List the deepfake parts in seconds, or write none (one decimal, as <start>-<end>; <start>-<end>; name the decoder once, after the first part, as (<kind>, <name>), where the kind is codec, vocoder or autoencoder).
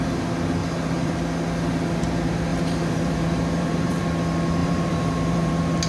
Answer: 0.6-1.1 (vocoder, BigVGAN v2); 2.5-4.0; 4.6-5.5